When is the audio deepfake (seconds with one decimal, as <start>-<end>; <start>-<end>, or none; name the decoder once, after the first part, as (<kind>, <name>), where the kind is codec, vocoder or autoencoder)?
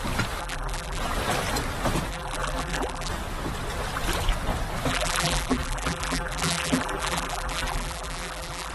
0.4-1.0 (vocoder, BigVGAN v2); 2.1-3.1; 4.9-8.7